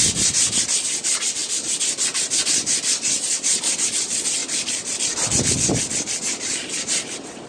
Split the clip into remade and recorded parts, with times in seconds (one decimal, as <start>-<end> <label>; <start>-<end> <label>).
0.0-7.5 recorded